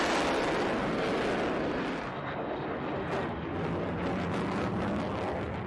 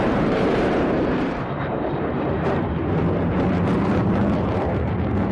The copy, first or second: second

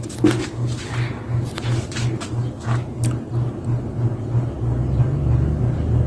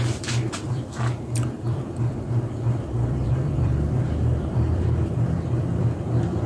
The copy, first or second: second